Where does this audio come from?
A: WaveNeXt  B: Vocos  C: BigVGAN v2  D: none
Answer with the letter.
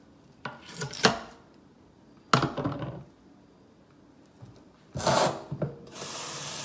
D